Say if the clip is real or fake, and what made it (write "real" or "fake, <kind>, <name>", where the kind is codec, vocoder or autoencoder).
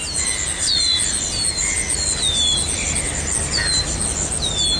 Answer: real